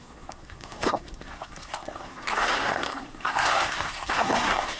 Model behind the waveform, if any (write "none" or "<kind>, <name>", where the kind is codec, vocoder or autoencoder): codec, SNAC